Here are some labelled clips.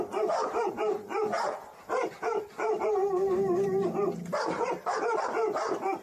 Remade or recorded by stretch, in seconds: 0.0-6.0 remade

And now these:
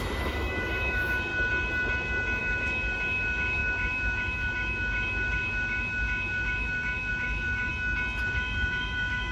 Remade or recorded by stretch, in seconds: 0.0-1.3 remade; 1.3-2.4 recorded; 2.4-7.7 remade; 7.7-8.2 recorded; 8.2-9.3 remade

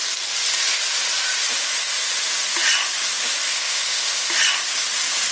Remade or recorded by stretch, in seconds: 0.0-3.5 recorded; 3.5-4.3 remade; 4.3-5.3 recorded

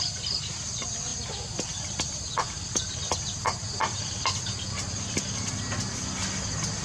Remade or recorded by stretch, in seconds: 0.0-6.8 recorded

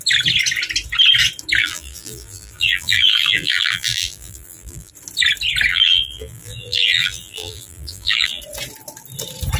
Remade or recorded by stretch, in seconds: 0.0-1.6 recorded; 1.6-4.9 remade; 4.9-5.7 recorded; 5.7-8.4 remade; 8.4-9.6 recorded

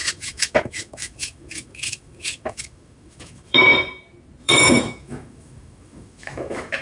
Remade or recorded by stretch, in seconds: 0.0-3.7 remade; 3.7-4.4 recorded; 4.4-6.8 remade

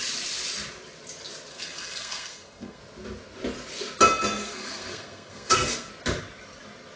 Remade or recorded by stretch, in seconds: 0.0-1.5 recorded; 1.5-2.8 remade; 2.8-4.4 recorded; 4.4-5.9 remade; 5.9-7.0 recorded